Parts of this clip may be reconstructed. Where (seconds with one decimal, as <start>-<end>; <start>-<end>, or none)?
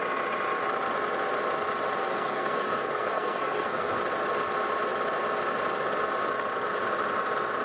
2.1-4.0